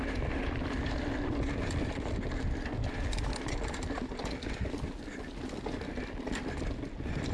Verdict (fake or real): real